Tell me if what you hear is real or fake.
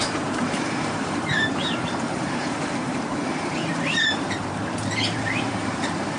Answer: fake